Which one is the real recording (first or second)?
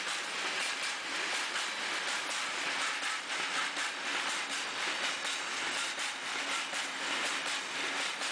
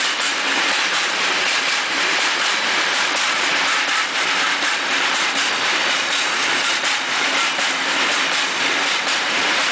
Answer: first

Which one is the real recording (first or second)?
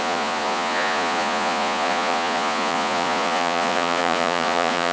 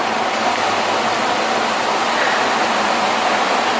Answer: second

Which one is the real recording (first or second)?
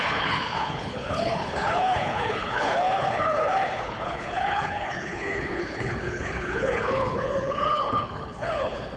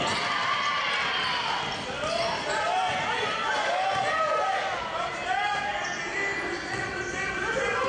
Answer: second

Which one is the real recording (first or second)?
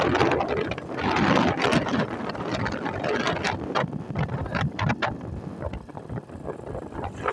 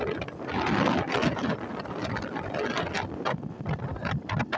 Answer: second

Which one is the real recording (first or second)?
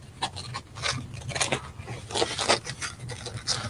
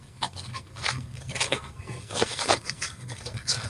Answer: first